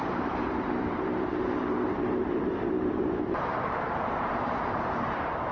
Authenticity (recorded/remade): remade